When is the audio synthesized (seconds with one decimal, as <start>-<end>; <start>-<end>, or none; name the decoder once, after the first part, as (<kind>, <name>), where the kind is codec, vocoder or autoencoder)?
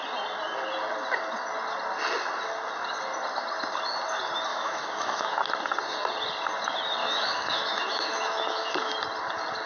4.5-5.4 (autoencoder, DAC-VAE); 7.0-8.9